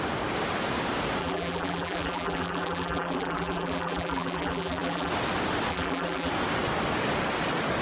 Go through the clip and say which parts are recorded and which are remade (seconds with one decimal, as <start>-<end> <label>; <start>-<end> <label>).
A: 0.0-1.2 recorded; 1.2-5.1 remade; 5.1-5.7 recorded; 5.7-6.3 remade; 6.3-7.8 recorded